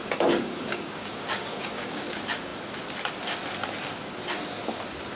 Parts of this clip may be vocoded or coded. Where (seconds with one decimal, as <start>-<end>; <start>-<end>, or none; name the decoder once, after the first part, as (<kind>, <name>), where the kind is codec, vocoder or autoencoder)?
0.0-2.0 (codec, DAC)